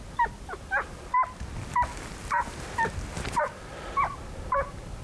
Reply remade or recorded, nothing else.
recorded